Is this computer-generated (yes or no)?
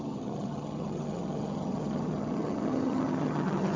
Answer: yes